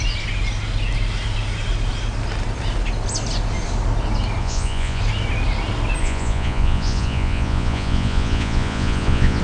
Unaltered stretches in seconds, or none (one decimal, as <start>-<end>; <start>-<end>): 0.0-4.4; 5.0-6.0